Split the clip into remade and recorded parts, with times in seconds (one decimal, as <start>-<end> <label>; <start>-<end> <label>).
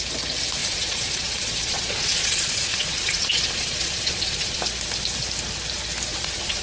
0.0-0.6 recorded; 0.6-4.6 remade; 4.6-6.1 recorded; 6.1-6.6 remade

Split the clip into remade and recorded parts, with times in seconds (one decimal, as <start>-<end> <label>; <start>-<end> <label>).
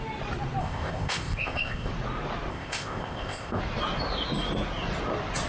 0.0-0.6 recorded; 0.6-1.9 remade; 1.9-2.5 recorded; 2.5-3.6 remade; 3.6-5.5 recorded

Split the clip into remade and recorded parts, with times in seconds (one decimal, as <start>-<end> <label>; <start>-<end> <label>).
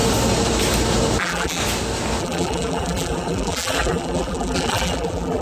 0.0-1.2 recorded; 1.2-1.6 remade; 1.6-2.2 recorded; 2.2-5.4 remade